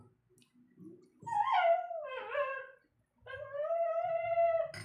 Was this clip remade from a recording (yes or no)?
no